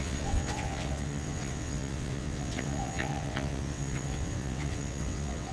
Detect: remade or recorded remade